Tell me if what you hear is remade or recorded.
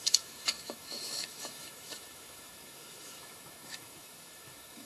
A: remade